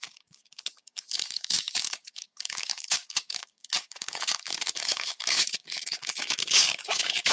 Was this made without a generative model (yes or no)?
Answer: no